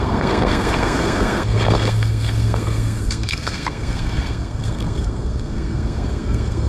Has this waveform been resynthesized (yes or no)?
yes